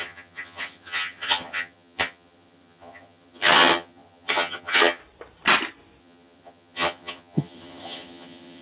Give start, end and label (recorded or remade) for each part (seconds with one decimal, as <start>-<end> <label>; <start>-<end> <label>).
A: 0.0-5.0 remade; 5.0-6.0 recorded; 6.0-8.6 remade